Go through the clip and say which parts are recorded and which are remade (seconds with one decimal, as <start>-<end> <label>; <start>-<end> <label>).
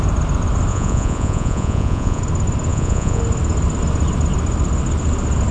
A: 0.0-0.7 recorded; 0.7-2.2 remade; 2.2-2.7 recorded; 2.7-3.2 remade; 3.2-5.5 recorded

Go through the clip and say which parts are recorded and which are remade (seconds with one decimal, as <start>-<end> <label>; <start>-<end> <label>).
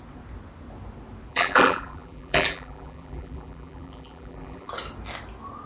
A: 0.0-1.3 recorded; 1.3-4.7 remade; 4.7-5.7 recorded